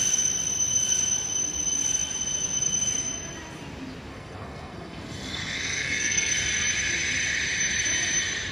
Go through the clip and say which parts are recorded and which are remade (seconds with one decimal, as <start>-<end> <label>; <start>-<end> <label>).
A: 0.0-4.1 recorded; 4.1-6.3 remade; 6.3-8.5 recorded